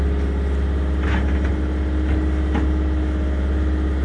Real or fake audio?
real